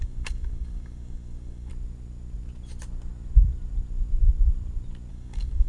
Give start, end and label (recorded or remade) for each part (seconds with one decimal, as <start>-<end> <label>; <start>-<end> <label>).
0.0-1.7 remade; 1.7-5.1 recorded; 5.1-5.7 remade